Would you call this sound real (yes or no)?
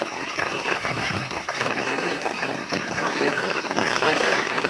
no